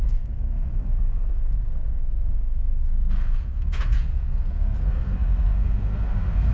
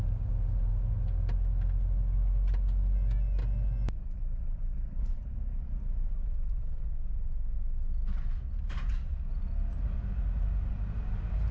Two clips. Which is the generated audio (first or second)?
first